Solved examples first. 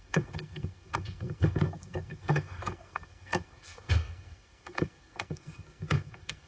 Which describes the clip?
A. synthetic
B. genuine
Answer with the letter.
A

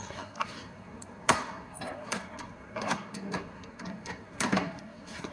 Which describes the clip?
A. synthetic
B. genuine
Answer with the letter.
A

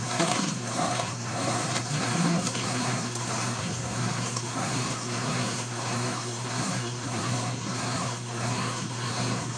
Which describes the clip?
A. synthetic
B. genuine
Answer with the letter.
A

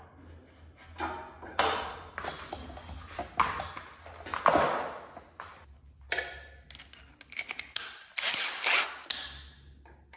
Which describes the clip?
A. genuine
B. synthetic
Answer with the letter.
A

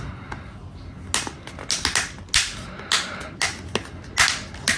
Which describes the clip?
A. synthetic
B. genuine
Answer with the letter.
B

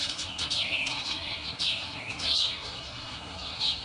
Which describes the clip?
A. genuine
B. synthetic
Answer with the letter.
B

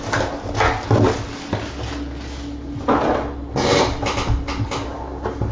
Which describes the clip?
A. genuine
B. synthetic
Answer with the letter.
A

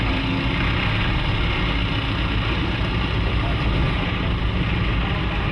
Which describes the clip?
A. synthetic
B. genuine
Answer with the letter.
B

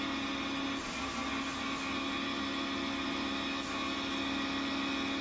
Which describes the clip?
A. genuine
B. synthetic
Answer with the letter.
A